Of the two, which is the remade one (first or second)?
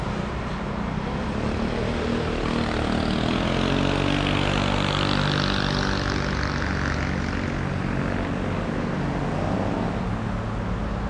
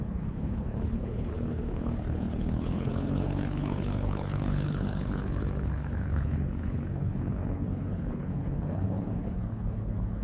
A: second